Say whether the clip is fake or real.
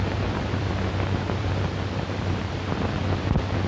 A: fake